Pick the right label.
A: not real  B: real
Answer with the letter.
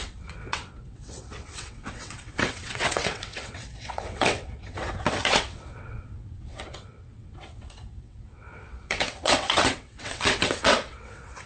A